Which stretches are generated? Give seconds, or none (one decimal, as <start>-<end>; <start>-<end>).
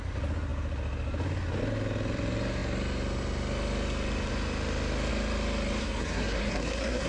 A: 5.8-7.1